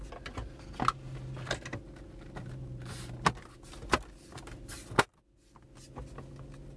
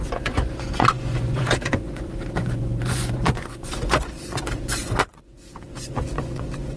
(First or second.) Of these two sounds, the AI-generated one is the second